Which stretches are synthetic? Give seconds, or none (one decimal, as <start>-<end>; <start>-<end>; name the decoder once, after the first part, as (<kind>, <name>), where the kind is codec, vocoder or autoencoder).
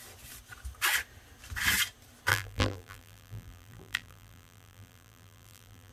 2.3-5.9 (vocoder, BigVGAN v2)